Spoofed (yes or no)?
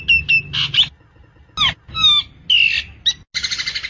no